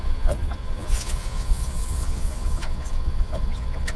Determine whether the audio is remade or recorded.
remade